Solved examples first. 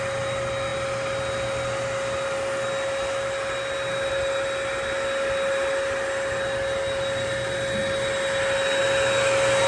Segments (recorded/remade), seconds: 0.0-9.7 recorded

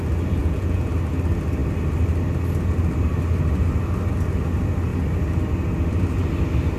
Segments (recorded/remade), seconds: 0.0-0.4 recorded; 0.4-0.9 remade; 0.9-6.8 recorded